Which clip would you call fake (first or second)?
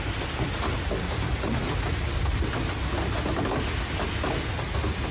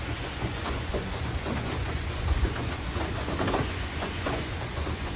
second